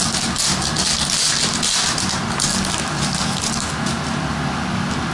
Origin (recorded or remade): recorded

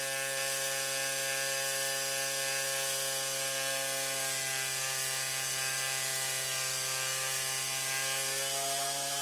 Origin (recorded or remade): recorded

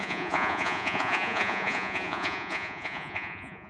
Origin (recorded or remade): remade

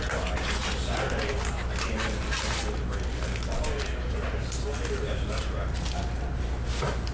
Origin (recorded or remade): recorded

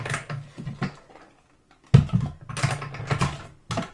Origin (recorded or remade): recorded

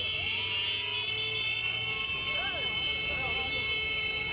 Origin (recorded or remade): recorded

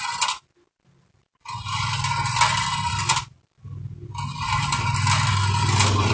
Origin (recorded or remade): recorded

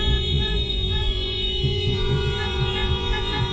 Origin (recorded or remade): remade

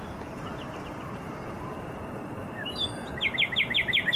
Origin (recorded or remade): recorded